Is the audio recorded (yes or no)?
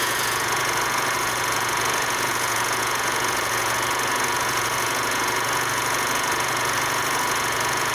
no